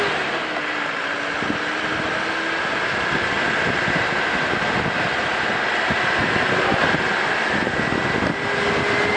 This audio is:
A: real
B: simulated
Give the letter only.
A